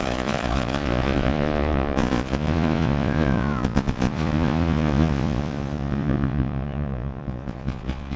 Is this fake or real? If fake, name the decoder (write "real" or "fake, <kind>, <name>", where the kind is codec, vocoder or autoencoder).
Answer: fake, vocoder, Vocos